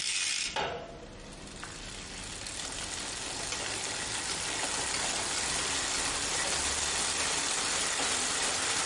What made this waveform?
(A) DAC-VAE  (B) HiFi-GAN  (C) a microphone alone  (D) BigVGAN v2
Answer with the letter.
C